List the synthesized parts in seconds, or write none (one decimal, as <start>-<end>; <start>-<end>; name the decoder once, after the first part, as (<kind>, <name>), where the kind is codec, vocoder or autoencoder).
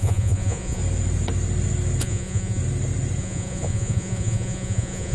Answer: 0.0-0.8 (vocoder, Vocos); 2.0-2.6; 3.2-5.1